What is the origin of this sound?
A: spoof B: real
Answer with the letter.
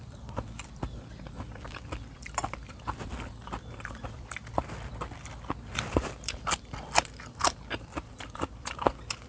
A